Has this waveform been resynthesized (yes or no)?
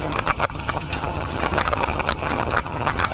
yes